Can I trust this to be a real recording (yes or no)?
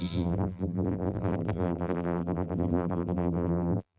no